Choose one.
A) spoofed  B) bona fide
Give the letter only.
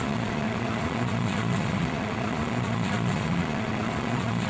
A